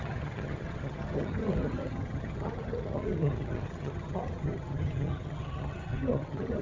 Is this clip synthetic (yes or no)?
yes